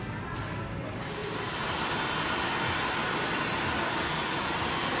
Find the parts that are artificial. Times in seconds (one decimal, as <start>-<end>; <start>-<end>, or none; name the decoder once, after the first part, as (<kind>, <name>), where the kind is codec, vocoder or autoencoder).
none